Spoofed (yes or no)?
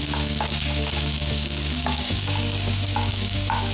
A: yes